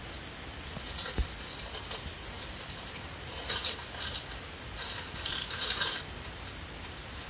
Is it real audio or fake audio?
real